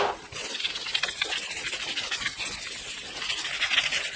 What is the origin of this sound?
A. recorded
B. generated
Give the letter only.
B